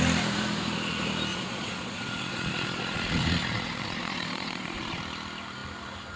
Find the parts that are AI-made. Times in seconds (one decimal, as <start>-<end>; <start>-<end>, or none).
1.3-5.0